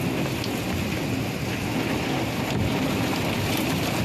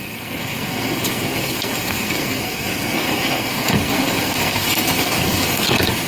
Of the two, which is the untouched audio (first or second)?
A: first